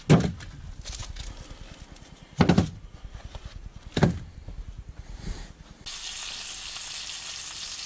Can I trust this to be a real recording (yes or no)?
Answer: yes